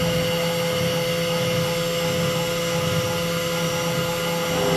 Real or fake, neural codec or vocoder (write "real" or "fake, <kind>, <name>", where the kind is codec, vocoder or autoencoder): real